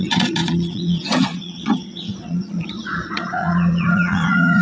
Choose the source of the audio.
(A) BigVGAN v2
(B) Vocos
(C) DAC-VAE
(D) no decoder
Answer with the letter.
B